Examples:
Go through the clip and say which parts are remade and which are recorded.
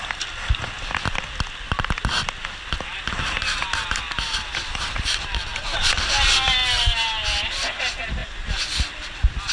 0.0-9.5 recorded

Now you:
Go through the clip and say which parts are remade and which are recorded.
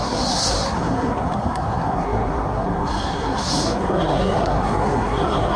0.0-5.6 remade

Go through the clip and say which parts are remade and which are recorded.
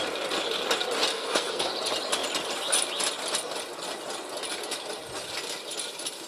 0.0-1.1 recorded; 1.1-1.7 remade; 1.7-6.3 recorded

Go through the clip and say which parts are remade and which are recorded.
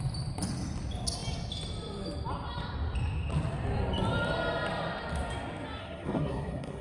0.0-5.8 recorded; 5.8-6.8 remade